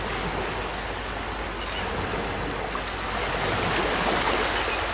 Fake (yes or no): no